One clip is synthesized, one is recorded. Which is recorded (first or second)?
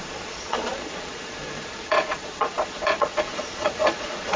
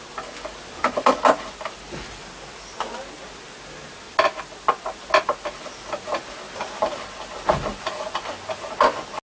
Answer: second